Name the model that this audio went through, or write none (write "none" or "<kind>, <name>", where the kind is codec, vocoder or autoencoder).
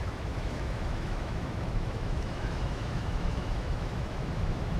autoencoder, DAC-VAE